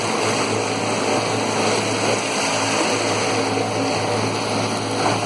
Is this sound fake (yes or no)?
no